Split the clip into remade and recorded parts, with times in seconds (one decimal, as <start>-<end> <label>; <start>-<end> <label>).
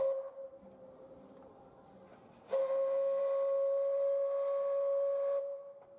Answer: 0.0-2.6 recorded; 2.6-3.2 remade; 3.2-6.0 recorded